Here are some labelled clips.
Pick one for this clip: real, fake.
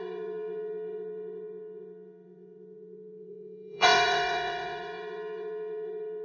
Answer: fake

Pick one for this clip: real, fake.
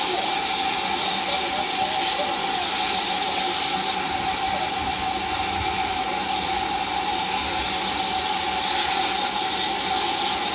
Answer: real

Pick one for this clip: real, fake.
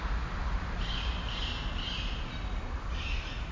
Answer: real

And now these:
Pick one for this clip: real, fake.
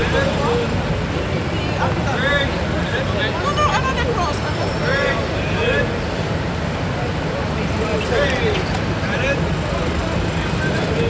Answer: real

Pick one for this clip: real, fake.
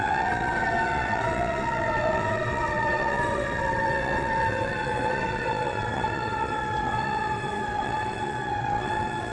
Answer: fake